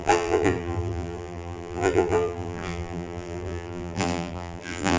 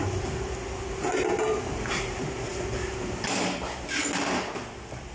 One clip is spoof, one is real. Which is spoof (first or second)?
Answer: first